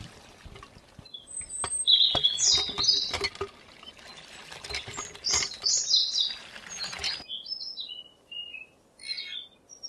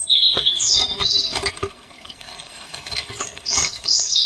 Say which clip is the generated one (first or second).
second